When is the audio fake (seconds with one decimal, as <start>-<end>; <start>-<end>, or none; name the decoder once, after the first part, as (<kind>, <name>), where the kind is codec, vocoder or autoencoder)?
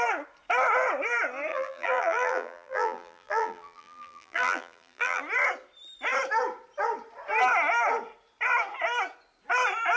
1.5-5.2 (vocoder, BigVGAN v2)